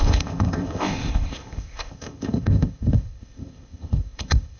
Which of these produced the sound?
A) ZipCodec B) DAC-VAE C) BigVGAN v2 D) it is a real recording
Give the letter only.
A